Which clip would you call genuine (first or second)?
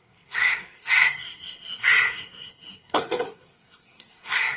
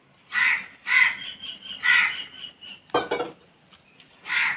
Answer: second